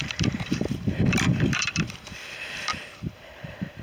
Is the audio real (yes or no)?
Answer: no